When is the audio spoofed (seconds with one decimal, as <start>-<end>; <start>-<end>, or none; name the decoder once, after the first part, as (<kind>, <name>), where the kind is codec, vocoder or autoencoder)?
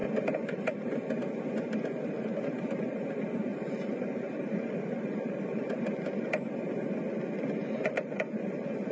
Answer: 3.5-5.8 (vocoder, BigVGAN v2); 7.6-8.9